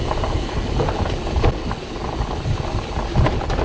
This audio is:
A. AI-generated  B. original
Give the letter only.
B